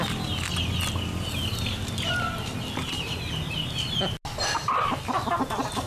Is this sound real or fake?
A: real